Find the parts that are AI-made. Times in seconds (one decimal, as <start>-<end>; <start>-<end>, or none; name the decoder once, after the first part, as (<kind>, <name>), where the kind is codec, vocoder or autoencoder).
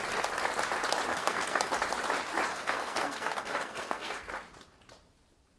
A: 1.1-1.7 (codec, SNAC); 2.5-4.3